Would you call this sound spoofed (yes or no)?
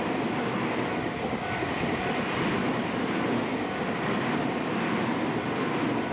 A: no